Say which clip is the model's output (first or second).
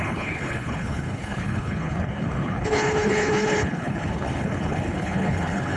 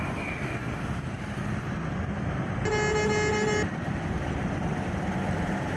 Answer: first